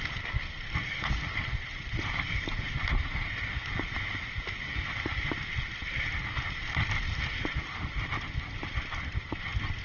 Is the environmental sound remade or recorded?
recorded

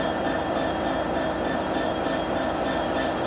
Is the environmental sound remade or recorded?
recorded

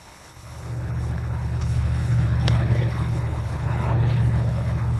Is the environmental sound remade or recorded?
remade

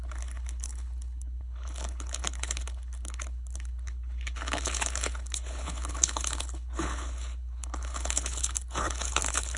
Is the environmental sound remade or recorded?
remade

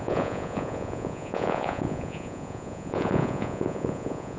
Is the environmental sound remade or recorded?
remade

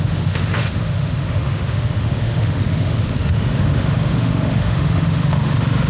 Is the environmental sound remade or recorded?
remade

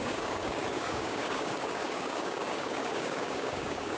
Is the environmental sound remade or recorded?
remade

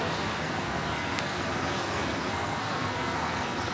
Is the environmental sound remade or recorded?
remade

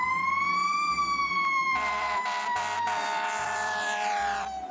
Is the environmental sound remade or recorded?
remade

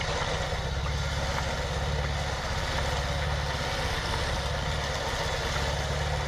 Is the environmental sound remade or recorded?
recorded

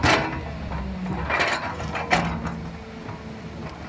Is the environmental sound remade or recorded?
recorded